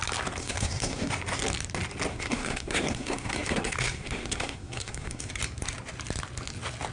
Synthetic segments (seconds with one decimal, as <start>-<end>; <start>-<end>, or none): 0.4-1.1; 2.1-5.3